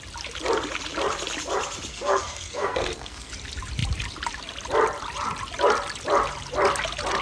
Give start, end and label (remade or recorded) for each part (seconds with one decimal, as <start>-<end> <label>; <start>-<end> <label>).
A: 0.0-1.9 recorded; 1.9-3.3 remade; 3.3-7.2 recorded